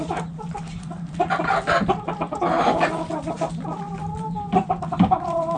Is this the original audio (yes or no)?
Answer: no